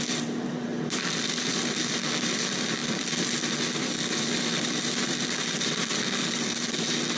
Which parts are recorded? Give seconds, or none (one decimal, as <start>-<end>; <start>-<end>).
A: none